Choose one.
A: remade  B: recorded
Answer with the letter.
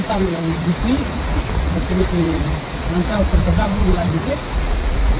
A